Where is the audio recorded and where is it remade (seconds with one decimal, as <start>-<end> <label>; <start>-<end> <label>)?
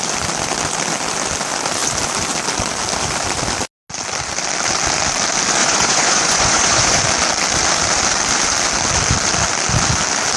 0.0-5.6 recorded; 5.6-7.0 remade; 7.0-10.4 recorded